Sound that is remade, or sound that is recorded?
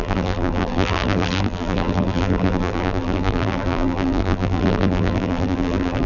remade